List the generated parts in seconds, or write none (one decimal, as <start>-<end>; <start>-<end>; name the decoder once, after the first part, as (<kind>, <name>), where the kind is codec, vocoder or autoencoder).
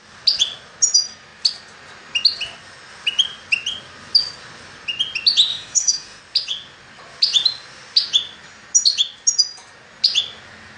5.5-6.2 (autoencoder, DAC-VAE)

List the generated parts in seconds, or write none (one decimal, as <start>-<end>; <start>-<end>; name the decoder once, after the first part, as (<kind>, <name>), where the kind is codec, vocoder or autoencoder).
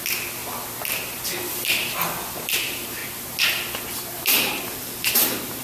none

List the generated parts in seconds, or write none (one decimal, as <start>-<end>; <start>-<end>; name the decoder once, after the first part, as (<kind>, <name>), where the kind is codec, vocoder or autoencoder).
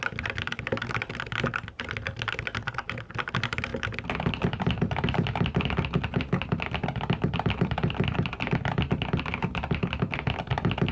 none